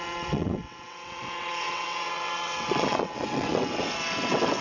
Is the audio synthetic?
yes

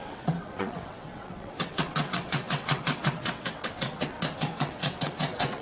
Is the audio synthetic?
yes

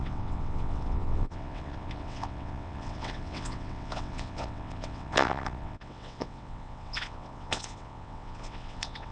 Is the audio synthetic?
yes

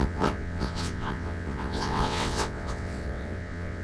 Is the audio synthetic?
yes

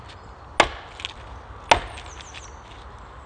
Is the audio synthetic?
no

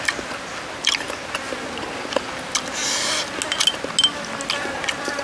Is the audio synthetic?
no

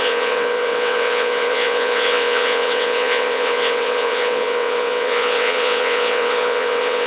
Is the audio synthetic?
yes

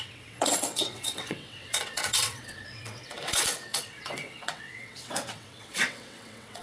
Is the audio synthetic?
yes